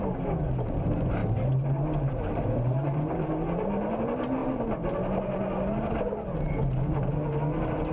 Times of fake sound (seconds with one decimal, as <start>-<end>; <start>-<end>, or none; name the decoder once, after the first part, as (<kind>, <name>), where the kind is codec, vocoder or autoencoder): 1.2-3.3 (vocoder, BigVGAN v2)